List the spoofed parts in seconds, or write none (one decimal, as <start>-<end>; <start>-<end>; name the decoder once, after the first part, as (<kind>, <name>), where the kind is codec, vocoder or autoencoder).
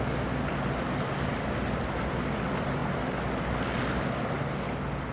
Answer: none